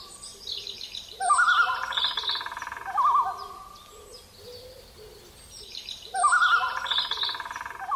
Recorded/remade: recorded